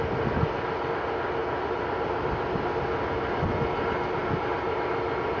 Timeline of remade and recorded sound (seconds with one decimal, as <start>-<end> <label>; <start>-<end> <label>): 0.0-1.4 recorded; 1.4-2.7 remade; 2.7-5.4 recorded